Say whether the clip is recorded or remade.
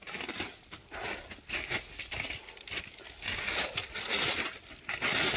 recorded